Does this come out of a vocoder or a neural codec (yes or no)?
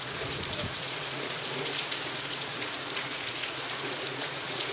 yes